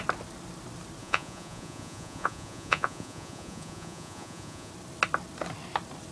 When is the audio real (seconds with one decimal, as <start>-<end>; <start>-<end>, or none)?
0.0-1.0; 4.7-6.1